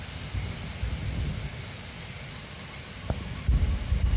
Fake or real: fake